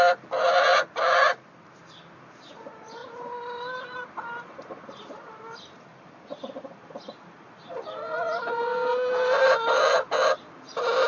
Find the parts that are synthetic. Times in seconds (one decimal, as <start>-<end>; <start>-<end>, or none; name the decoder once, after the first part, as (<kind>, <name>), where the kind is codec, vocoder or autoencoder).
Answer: none